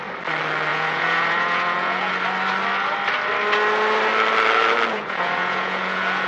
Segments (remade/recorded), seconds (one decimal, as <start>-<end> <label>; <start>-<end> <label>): 0.0-0.7 recorded; 0.7-2.1 remade; 2.1-4.9 recorded; 4.9-6.3 remade